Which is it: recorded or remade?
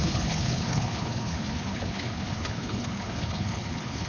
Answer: remade